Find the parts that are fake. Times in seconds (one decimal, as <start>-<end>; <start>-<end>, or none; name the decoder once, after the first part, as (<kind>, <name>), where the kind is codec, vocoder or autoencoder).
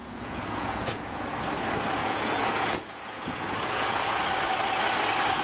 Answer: 0.0-1.3 (vocoder, Vocos); 2.0-4.2